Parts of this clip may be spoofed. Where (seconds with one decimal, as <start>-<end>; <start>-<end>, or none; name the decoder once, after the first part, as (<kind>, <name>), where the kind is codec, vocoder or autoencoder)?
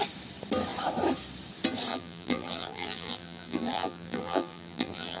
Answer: 1.9-5.2 (vocoder, BigVGAN v2)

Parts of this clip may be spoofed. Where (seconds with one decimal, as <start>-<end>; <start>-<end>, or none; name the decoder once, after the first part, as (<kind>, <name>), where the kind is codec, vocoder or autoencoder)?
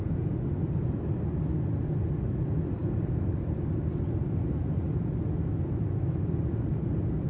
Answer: 2.8-3.9 (vocoder, BigVGAN v2)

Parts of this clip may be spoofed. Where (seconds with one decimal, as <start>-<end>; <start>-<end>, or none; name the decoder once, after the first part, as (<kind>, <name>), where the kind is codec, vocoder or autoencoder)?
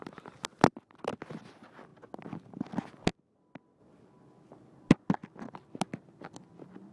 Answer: none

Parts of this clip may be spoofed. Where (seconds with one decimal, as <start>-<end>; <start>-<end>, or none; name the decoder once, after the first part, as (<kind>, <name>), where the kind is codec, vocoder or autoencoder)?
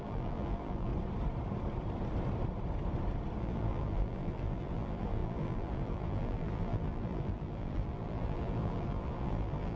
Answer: 0.0-0.9 (vocoder, BigVGAN v2); 3.4-9.8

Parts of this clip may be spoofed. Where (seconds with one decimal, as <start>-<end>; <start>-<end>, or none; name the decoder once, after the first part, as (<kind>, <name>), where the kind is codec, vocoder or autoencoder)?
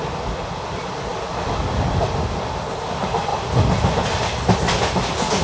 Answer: 1.1-1.6 (vocoder, BigVGAN v2)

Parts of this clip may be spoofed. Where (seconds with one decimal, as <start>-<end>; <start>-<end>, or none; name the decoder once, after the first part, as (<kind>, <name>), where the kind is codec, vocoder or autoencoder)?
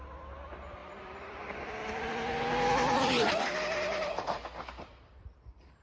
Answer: 0.8-1.7 (vocoder, BigVGAN v2); 2.8-5.8